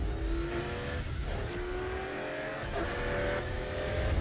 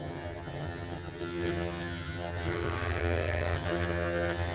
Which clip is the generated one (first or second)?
second